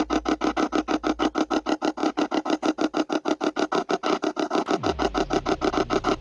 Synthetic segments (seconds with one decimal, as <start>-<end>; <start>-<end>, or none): none